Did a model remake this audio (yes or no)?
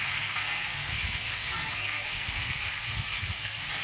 yes